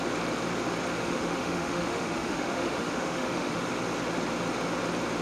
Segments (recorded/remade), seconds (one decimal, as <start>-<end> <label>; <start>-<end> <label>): 0.0-1.0 recorded; 1.0-3.7 remade; 3.7-5.2 recorded